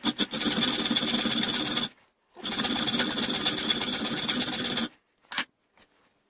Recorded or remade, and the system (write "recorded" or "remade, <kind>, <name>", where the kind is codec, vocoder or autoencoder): recorded